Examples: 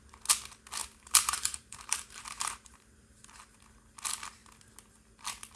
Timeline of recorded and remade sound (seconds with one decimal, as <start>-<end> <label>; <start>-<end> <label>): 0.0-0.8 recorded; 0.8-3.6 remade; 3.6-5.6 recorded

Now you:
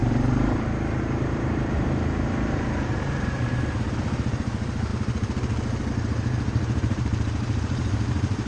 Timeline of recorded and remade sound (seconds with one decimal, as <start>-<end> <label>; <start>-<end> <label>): 0.0-4.9 remade; 4.9-5.9 recorded; 5.9-8.5 remade

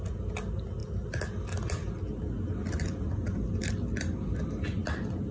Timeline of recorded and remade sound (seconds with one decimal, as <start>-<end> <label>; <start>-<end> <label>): 0.0-5.3 recorded

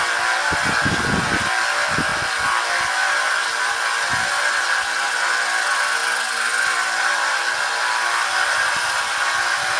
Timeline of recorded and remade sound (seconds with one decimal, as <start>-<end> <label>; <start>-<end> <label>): 0.0-9.8 recorded

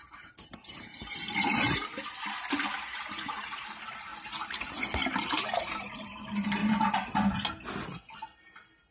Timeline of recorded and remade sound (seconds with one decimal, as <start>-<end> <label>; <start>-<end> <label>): 0.0-1.9 remade; 1.9-2.8 recorded; 2.8-6.6 remade; 6.6-8.9 recorded

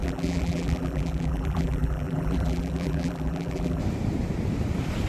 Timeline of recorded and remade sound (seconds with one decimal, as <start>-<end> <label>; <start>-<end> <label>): 0.0-3.8 remade; 3.8-5.1 recorded